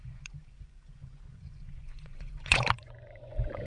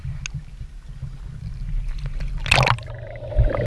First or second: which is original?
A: second